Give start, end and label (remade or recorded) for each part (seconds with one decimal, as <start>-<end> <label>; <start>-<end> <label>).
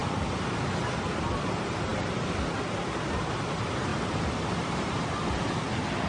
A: 0.0-0.7 remade; 0.7-3.9 recorded; 3.9-5.3 remade; 5.3-6.1 recorded